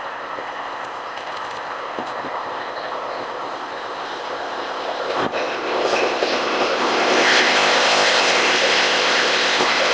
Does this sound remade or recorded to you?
remade